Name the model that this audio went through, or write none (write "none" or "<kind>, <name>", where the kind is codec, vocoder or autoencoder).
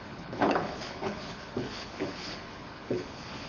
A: codec, HILCodec